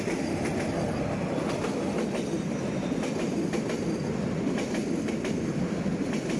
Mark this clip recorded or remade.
recorded